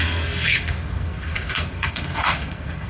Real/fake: fake